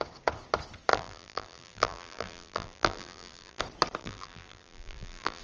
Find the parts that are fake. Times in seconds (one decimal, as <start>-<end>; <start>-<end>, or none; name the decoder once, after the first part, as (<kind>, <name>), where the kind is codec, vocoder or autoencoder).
0.9-3.6 (vocoder, BigVGAN v2); 4.0-5.4